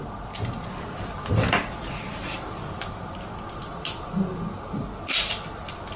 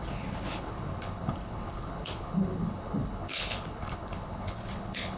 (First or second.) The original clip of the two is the first